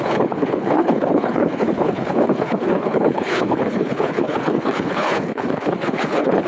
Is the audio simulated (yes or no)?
yes